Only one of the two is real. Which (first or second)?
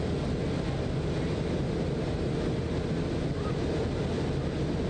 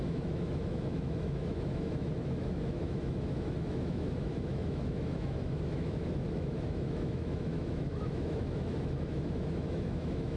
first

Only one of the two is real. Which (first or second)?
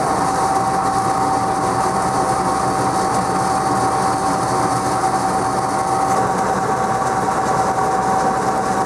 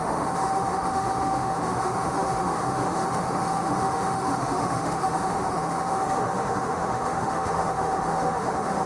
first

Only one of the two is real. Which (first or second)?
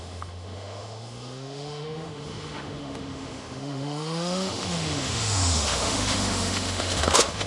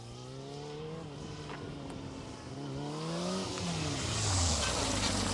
second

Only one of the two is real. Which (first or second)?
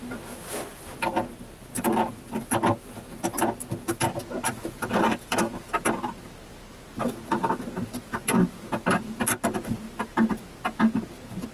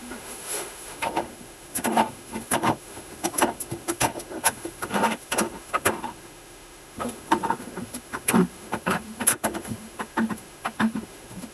first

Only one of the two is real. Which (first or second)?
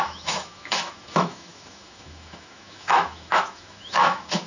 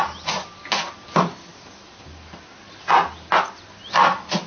second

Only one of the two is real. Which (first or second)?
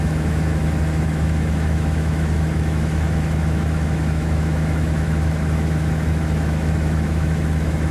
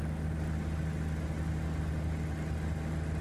second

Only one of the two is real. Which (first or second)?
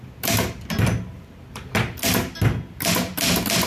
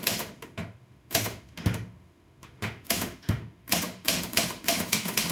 first